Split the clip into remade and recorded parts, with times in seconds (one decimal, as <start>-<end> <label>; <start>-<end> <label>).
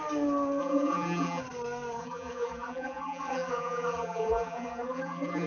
0.0-0.6 recorded; 0.6-1.4 remade; 1.4-2.0 recorded; 2.0-5.5 remade